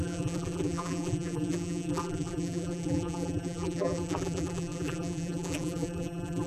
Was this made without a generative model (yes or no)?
no